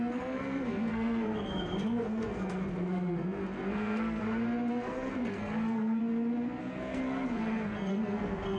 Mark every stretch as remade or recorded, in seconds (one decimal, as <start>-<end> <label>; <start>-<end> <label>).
0.0-4.2 remade; 4.2-4.7 recorded; 4.7-6.0 remade; 6.0-6.6 recorded; 6.6-8.6 remade